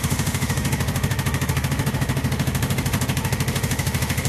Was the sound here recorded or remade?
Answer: remade